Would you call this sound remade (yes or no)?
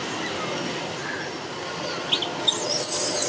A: no